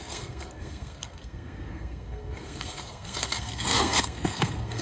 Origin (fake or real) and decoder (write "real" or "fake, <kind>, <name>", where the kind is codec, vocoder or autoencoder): fake, codec, SNAC